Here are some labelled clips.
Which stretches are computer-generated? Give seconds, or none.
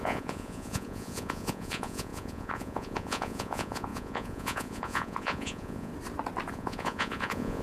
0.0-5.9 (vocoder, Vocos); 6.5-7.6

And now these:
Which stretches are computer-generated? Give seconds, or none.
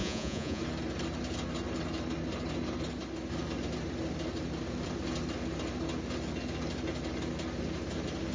0.0-0.6 (vocoder, Vocos)